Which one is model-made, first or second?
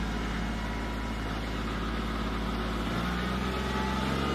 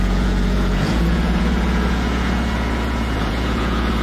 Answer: second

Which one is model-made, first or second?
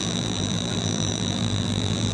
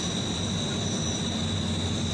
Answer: first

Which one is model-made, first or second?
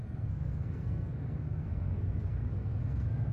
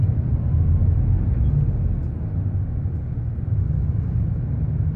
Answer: first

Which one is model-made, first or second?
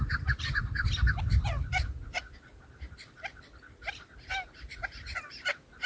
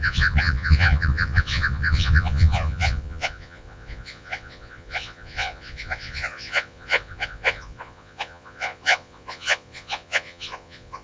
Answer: second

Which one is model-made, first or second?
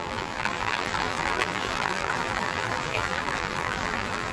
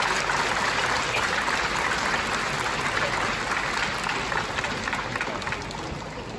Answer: first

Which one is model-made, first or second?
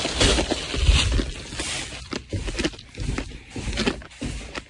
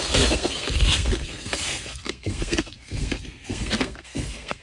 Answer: second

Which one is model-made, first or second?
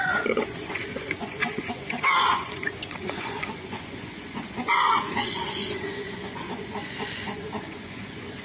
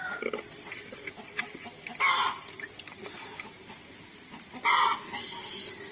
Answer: first